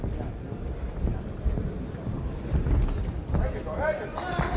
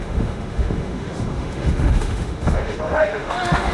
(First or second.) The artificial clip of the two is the second